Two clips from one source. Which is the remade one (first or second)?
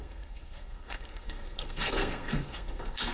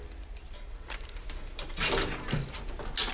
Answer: first